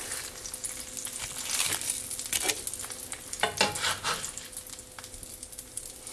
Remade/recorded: recorded